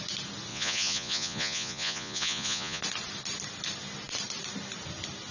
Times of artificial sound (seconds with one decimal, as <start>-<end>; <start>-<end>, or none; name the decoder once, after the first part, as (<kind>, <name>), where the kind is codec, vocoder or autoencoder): 0.5-2.8 (vocoder, Vocos)